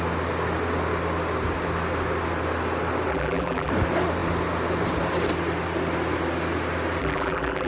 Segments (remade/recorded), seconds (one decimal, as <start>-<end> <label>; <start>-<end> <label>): 0.0-3.1 recorded; 3.1-3.7 remade; 3.7-7.0 recorded; 7.0-7.7 remade